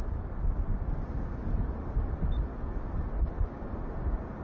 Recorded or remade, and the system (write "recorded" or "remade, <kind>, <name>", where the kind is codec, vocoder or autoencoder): recorded